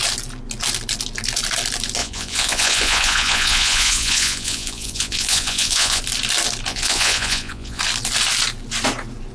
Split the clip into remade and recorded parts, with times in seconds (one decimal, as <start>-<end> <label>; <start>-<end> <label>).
0.0-2.0 recorded; 2.0-6.0 remade; 6.0-6.7 recorded; 6.7-7.8 remade; 7.8-9.3 recorded